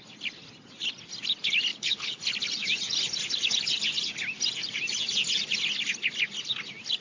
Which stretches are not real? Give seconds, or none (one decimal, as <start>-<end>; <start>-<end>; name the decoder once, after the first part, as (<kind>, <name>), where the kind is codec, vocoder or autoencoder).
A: 1.7-2.2 (codec, HILCodec)